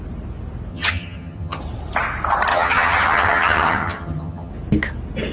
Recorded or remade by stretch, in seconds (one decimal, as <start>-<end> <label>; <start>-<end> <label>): 0.0-0.7 recorded; 0.7-1.6 remade; 1.6-2.5 recorded; 2.5-4.5 remade; 4.5-5.3 recorded